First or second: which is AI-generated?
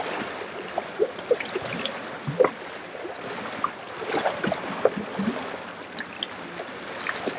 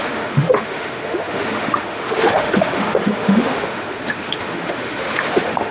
second